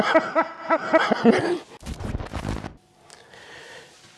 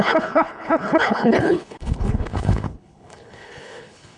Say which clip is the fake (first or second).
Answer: second